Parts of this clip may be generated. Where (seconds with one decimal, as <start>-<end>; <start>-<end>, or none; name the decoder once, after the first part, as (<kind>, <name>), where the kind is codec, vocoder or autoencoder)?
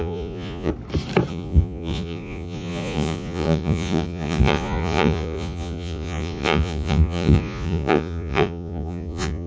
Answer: 0.0-0.7 (vocoder, Vocos); 1.3-9.5